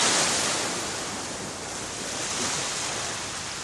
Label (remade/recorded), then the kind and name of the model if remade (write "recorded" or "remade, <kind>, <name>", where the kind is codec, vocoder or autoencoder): recorded